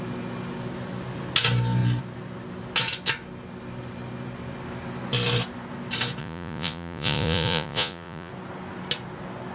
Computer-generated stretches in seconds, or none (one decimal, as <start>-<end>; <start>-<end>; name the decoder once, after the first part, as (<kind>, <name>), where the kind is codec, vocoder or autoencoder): 6.2-8.3 (vocoder, Vocos)